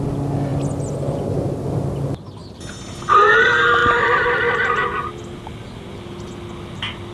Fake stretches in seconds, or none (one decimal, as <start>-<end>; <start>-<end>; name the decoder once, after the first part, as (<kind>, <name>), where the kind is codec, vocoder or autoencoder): 0.5-1.2 (vocoder, BigVGAN v2); 2.4-3.3